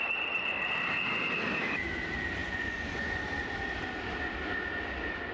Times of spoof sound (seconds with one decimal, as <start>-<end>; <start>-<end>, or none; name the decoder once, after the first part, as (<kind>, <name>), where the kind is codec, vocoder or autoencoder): 2.4-3.2 (vocoder, Vocos)